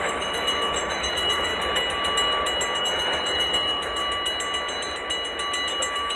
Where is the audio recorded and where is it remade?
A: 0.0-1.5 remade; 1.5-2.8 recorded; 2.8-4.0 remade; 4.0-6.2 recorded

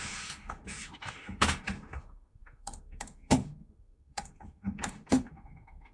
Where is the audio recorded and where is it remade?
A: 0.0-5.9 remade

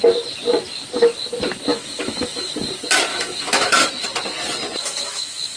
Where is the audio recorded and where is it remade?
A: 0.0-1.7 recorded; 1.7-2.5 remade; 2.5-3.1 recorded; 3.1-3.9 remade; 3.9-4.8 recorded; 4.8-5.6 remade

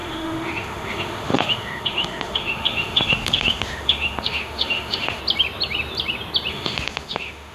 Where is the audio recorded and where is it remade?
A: 0.0-5.2 remade; 5.2-6.5 recorded; 6.5-7.5 remade

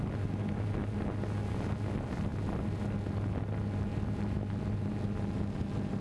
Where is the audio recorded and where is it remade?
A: 0.0-6.0 recorded